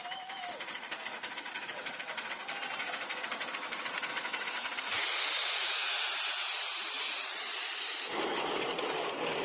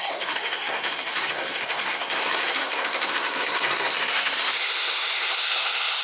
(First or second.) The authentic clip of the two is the first